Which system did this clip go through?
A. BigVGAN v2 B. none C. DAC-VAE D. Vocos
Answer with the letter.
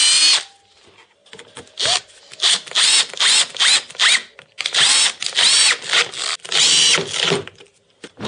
B